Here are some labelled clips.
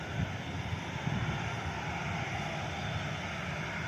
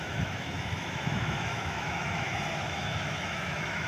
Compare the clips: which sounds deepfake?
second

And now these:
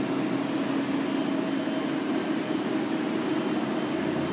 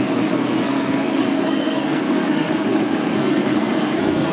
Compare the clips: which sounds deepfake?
second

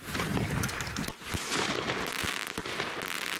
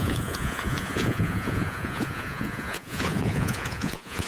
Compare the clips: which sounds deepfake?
second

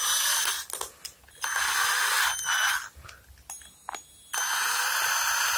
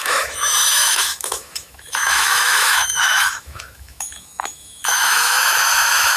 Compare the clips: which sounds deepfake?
second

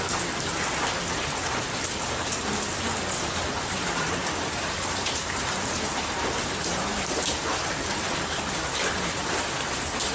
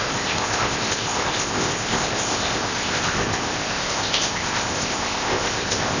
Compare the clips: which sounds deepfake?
second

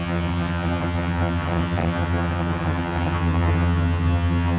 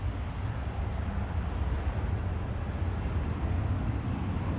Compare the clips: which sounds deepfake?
first